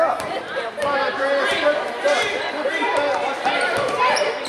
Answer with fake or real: fake